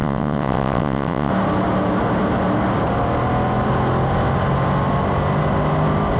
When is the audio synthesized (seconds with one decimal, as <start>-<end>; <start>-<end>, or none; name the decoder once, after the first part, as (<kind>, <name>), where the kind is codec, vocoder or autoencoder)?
0.0-1.3 (vocoder, WaveNeXt)

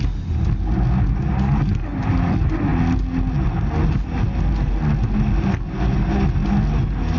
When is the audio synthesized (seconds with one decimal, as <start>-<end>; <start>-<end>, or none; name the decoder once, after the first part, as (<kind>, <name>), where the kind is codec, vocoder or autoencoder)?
none

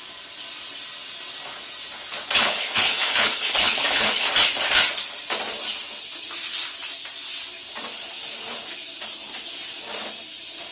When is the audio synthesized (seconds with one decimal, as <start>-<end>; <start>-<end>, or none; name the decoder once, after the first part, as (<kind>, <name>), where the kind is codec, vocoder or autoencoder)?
2.4-4.3 (codec, HILCodec)